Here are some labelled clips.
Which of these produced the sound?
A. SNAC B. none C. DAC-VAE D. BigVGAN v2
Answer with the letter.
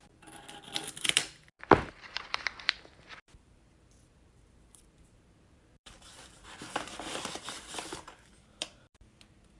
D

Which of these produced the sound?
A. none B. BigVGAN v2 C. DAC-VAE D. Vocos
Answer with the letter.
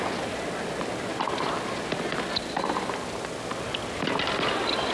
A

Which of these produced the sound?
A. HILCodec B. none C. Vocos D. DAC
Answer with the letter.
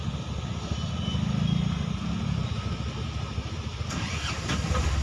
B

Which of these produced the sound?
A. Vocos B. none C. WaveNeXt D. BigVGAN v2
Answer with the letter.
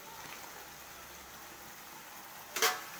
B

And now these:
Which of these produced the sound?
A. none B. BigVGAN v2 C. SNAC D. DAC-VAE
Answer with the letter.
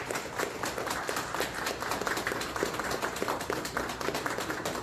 B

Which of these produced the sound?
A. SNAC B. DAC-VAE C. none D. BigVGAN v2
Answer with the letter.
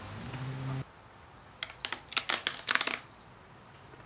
C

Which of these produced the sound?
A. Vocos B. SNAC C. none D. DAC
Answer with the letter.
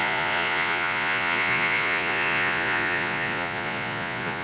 A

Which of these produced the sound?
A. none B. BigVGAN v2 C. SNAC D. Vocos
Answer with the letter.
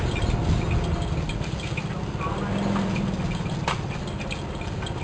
A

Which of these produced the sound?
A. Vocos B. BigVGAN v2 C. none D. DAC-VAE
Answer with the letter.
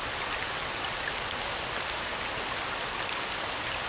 C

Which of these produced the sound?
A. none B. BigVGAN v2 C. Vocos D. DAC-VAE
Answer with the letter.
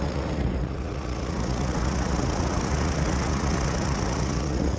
C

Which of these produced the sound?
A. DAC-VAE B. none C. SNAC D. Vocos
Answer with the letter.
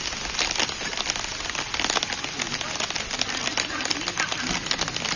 B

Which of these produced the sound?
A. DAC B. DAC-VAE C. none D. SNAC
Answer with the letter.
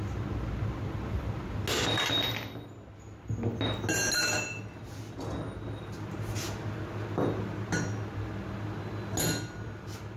C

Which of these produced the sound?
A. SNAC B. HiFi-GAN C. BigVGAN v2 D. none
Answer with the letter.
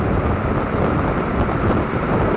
D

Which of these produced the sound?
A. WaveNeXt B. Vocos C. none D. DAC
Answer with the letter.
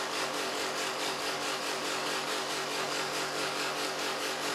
D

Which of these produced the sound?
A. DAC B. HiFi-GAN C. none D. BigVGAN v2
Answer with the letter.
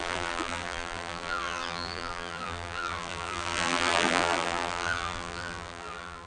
D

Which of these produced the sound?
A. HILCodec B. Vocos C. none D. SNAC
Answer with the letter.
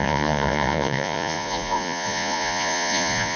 B